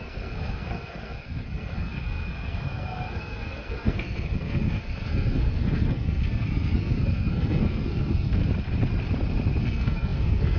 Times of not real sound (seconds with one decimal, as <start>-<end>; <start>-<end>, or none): 0.0-8.4; 9.6-10.6